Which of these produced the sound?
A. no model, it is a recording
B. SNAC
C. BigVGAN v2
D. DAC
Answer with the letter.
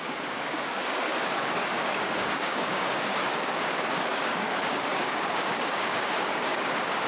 D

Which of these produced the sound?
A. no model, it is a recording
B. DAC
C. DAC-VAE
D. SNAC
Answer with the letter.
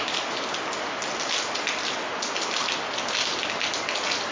A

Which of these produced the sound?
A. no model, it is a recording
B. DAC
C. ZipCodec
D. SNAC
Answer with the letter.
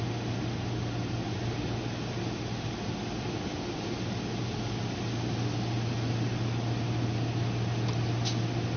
A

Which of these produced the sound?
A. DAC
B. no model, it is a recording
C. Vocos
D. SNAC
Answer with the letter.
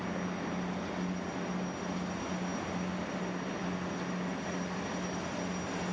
B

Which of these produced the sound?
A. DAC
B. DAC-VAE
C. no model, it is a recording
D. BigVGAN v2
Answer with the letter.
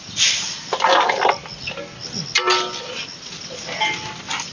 C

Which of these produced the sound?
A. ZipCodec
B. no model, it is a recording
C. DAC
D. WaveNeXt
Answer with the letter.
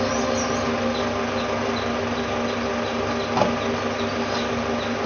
B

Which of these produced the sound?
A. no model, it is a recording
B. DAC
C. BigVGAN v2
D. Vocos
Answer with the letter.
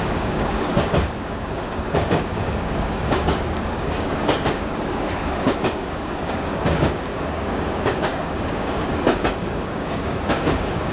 B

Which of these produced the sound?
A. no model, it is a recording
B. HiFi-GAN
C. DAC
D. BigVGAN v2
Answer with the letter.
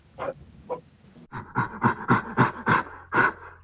A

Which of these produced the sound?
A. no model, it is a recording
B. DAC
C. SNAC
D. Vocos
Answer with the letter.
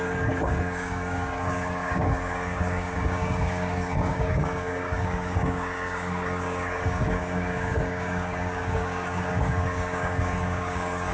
B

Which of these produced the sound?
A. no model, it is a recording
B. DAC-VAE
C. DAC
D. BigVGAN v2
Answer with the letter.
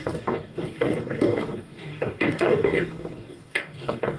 C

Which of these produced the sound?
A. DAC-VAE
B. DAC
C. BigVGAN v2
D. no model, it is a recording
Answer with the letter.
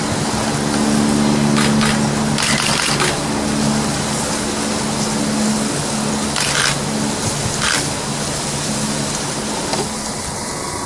D